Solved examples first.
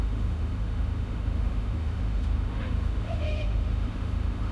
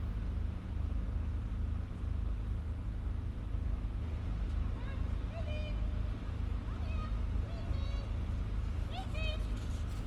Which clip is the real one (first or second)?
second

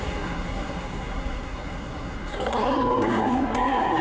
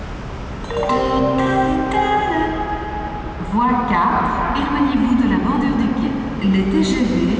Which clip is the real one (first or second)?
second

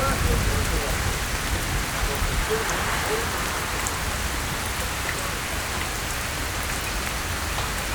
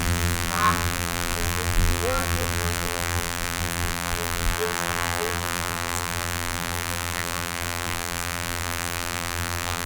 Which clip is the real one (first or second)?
first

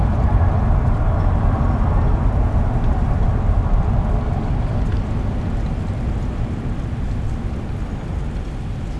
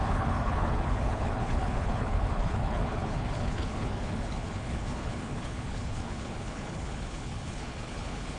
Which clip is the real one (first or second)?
first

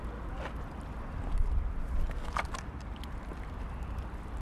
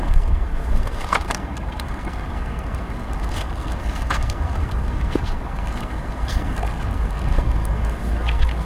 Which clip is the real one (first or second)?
first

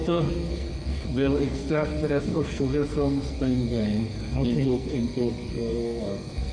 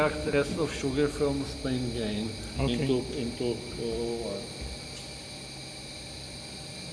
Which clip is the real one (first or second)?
second